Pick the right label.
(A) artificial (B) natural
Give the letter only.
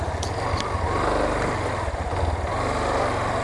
B